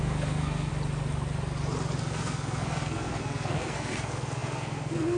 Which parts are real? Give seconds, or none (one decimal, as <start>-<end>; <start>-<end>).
0.7-2.0